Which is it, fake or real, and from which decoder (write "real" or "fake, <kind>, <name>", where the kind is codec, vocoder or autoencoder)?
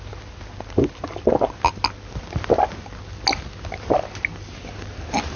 real